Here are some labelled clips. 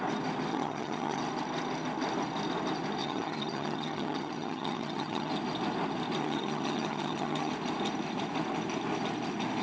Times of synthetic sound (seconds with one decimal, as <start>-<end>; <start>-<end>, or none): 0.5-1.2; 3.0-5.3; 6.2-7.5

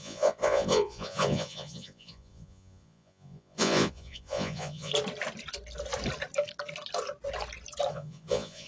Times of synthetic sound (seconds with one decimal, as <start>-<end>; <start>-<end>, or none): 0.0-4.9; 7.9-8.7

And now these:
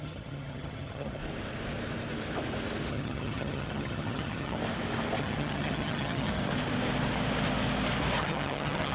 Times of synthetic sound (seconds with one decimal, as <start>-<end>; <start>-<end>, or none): 0.0-1.2; 2.9-4.6; 5.2-6.4; 8.2-8.9